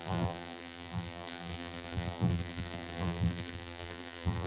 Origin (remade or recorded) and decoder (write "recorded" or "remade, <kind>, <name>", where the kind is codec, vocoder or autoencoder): remade, vocoder, BigVGAN v2